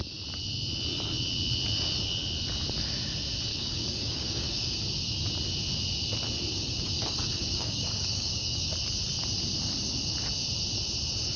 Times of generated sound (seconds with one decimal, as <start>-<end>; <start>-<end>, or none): 3.5-4.8; 6.5-8.7